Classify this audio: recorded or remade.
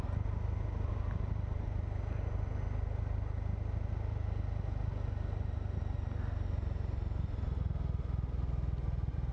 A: recorded